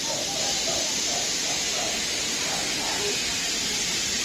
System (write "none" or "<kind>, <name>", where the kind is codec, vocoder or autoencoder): none